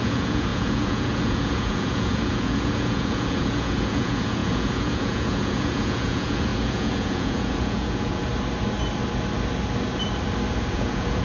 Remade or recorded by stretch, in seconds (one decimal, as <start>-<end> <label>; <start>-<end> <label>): 0.0-8.3 remade; 8.3-10.7 recorded; 10.7-11.2 remade

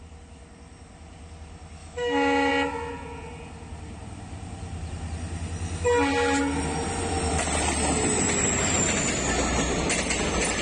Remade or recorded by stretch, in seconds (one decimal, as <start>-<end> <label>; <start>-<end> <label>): 0.0-1.8 recorded; 1.8-2.5 remade; 2.5-10.6 recorded

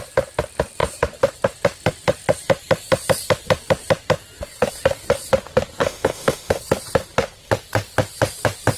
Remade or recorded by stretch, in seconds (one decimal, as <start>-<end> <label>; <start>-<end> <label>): 0.0-5.8 recorded; 5.8-6.6 remade; 6.6-8.8 recorded